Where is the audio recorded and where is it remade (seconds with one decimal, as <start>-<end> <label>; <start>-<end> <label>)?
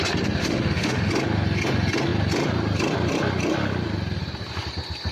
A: 0.0-0.4 recorded; 0.4-1.1 remade; 1.1-5.1 recorded